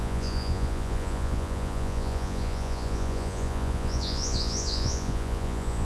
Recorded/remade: remade